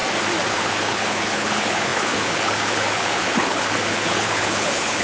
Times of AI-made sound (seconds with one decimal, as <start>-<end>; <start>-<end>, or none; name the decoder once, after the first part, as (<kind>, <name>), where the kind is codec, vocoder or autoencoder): 0.5-5.0 (codec, HILCodec)